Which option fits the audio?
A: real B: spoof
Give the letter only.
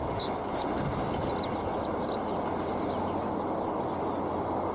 A